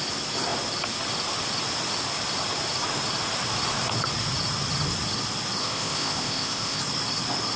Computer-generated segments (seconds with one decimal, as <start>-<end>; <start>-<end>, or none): 5.6-6.8